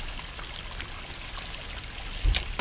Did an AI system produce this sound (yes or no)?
no